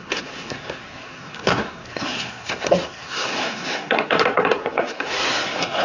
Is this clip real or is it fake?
fake